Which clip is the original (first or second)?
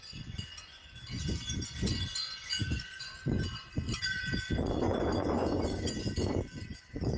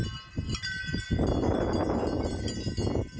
second